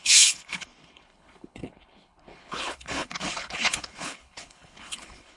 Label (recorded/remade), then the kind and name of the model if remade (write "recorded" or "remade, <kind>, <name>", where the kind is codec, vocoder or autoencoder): remade, codec, HILCodec